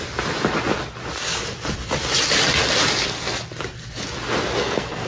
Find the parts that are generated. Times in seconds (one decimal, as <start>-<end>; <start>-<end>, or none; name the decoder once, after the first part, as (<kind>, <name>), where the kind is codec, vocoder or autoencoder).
4.6-5.1 (codec, SNAC)